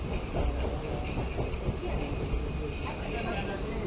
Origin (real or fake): real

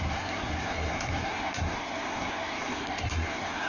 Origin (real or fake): fake